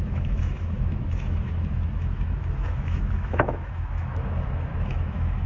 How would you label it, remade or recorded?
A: remade